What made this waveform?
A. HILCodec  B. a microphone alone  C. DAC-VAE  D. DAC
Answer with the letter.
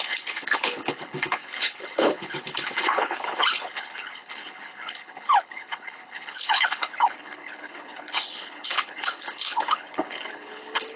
A